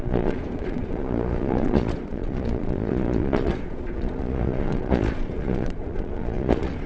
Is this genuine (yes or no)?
no